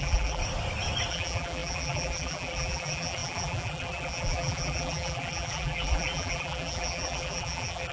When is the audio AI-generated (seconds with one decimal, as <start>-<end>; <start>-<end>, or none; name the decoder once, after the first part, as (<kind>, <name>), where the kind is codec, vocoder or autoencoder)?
0.0-0.4 (vocoder, BigVGAN v2); 1.1-7.9